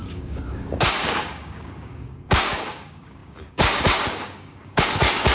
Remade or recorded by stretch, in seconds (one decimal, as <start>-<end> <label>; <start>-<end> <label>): 0.0-5.3 remade